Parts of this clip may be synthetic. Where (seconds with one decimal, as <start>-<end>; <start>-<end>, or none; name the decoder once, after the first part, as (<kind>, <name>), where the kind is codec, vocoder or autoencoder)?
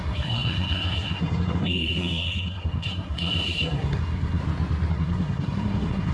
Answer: 0.0-4.4 (codec, SNAC); 4.9-6.1